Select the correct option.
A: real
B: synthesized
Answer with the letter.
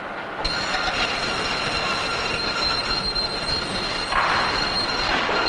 A